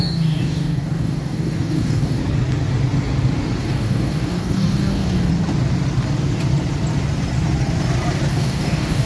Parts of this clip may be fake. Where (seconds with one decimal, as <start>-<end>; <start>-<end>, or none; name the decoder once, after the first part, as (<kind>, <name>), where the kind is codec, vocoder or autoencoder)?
0.0-2.2 (codec, DAC); 3.6-5.3; 8.3-9.1